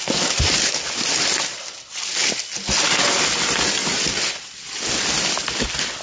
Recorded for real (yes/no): yes